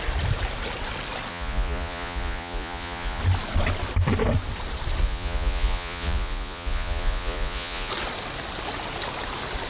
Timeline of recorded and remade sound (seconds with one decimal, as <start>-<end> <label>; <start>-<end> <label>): 0.0-1.3 recorded; 1.3-3.2 remade; 3.2-5.0 recorded; 5.0-7.9 remade; 7.9-9.7 recorded